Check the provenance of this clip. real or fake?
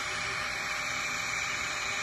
fake